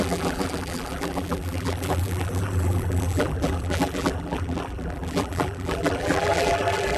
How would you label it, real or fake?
fake